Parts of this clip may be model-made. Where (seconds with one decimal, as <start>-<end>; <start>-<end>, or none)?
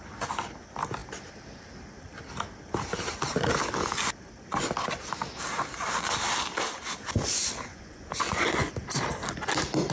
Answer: 7.7-8.7